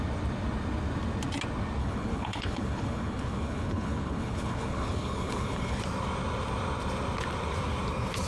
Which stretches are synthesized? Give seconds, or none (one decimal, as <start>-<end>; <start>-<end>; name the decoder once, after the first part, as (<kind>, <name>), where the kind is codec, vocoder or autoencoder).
1.8-5.8 (codec, HILCodec)